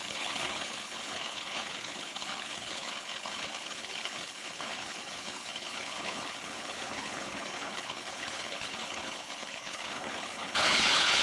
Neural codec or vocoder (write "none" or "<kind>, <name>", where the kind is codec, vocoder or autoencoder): codec, HILCodec